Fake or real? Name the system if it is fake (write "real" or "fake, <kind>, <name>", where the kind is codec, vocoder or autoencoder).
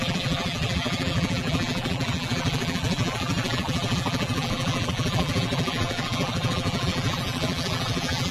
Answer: fake, vocoder, BigVGAN v2